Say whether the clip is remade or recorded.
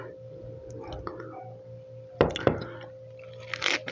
recorded